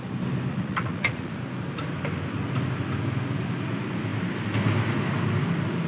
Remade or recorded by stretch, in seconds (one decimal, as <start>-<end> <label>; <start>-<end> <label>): 0.0-0.5 recorded; 0.5-1.4 remade; 1.4-5.9 recorded